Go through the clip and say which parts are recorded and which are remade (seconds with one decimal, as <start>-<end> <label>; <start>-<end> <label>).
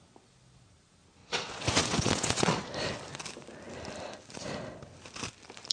0.0-1.2 recorded; 1.2-2.6 remade; 2.6-5.7 recorded